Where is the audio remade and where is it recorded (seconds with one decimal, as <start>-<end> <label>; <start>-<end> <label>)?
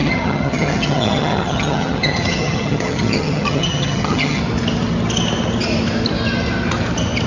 0.0-4.4 remade; 4.4-7.3 recorded